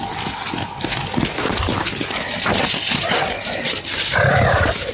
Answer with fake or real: real